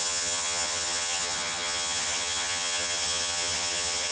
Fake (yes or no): yes